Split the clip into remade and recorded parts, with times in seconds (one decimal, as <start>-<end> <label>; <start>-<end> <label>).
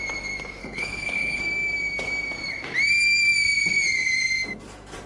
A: 0.0-0.6 recorded; 0.6-1.4 remade; 1.4-5.1 recorded